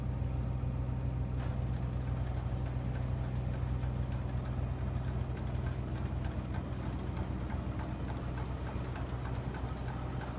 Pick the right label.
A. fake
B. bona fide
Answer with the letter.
B